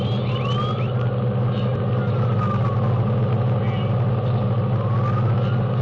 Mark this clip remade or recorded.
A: recorded